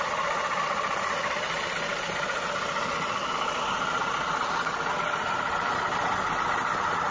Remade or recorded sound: recorded